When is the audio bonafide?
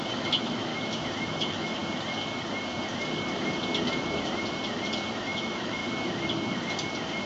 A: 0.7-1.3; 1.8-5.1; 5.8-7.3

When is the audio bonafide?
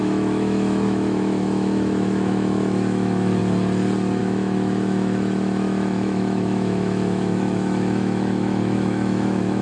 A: 3.4-4.2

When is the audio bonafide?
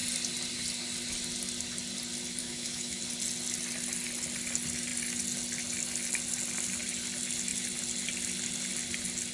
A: 0.0-2.4; 3.0-9.3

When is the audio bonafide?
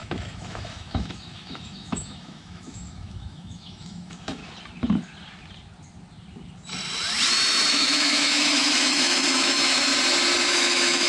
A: 4.4-7.7; 9.9-10.5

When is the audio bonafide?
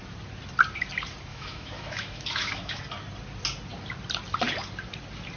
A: 0.0-1.3; 2.8-5.4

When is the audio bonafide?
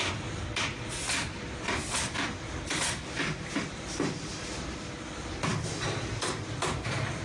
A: 0.0-7.2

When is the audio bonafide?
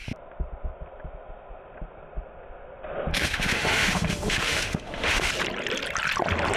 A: 0.0-3.1; 5.3-6.6